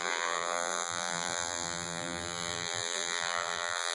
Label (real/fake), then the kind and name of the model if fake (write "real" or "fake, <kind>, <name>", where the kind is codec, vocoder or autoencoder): fake, vocoder, BigVGAN v2